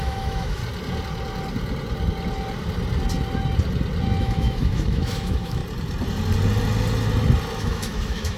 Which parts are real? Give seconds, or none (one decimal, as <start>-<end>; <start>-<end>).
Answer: 0.6-4.2; 5.6-7.6

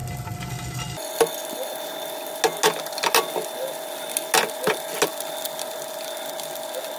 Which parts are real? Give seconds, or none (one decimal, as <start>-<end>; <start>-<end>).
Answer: 0.0-7.0

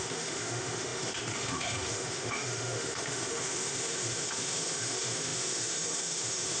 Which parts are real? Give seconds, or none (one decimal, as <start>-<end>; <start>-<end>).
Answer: none

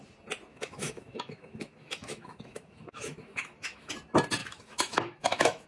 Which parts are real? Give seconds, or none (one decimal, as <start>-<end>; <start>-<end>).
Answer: 0.0-0.5; 3.9-4.4

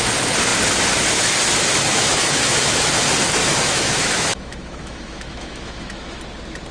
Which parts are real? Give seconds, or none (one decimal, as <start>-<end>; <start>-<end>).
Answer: 0.0-1.9; 2.9-3.4; 6.2-6.7

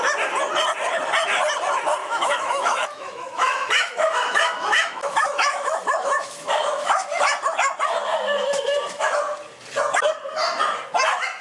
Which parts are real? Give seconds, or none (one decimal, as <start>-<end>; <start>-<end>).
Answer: 0.0-2.0; 7.2-8.4; 9.2-11.4

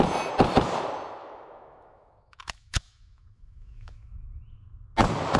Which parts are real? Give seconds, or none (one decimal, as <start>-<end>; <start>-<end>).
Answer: 0.0-1.2; 4.2-5.4

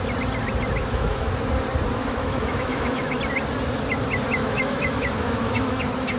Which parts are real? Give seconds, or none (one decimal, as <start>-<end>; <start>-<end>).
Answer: 0.0-0.8; 1.3-2.0; 3.2-4.4; 5.8-6.2